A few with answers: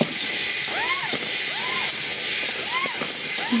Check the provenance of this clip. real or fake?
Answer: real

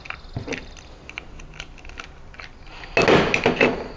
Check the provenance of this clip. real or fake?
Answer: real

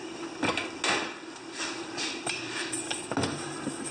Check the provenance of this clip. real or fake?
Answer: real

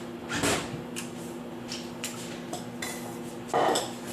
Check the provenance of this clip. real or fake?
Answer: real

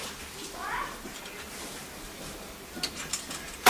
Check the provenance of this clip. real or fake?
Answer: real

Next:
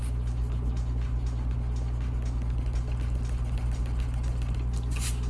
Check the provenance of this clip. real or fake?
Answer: real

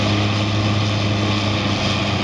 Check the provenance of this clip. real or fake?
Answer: real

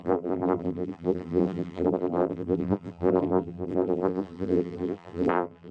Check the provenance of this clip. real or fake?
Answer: fake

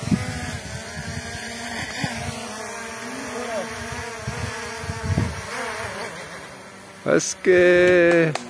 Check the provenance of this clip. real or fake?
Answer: real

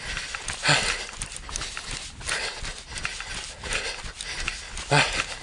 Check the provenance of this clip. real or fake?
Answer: real